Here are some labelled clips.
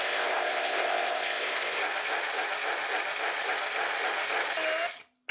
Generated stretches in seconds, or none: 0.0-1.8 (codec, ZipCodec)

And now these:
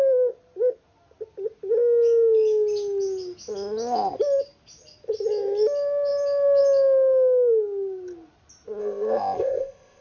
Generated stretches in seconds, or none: 8.8-10.0 (codec, ZipCodec)

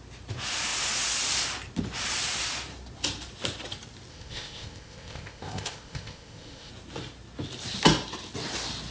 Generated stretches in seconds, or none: 4.1-6.7 (codec, ZipCodec)

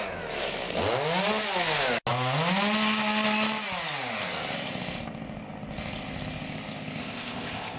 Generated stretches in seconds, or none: 7.0-7.8 (codec, ZipCodec)

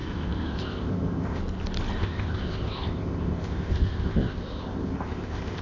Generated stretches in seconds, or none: 0.0-1.4 (codec, ZipCodec); 2.0-5.6

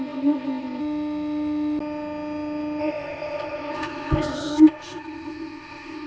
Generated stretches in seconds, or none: 0.0-0.8 (codec, ZipCodec); 2.8-6.1